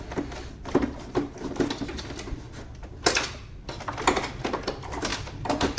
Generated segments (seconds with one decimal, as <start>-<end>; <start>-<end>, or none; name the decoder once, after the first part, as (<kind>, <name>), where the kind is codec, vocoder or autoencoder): 5.1-5.8 (vocoder, BigVGAN v2)